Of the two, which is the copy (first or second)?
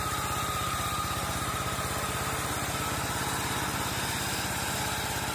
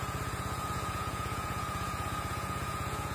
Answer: second